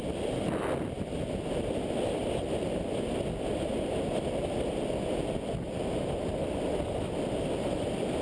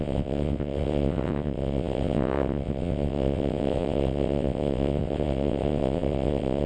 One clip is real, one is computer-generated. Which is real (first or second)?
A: first